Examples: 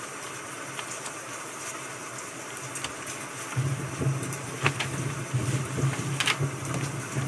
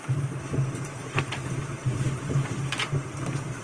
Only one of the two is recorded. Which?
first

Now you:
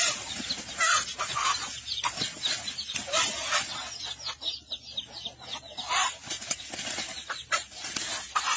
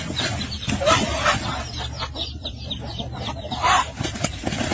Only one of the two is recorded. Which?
first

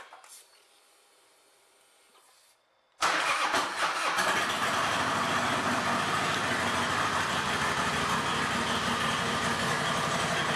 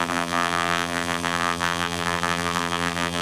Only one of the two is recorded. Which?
first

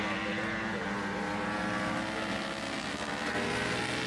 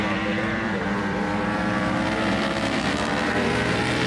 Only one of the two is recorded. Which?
first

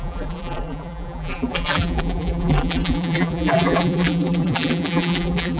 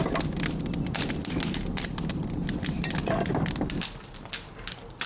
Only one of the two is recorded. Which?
second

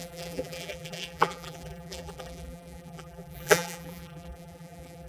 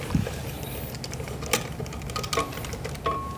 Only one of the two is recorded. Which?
second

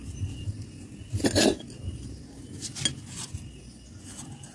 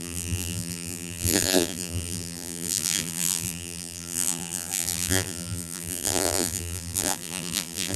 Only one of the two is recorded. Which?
first